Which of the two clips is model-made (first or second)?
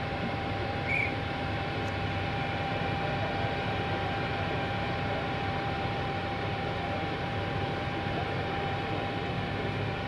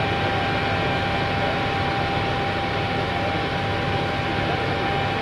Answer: first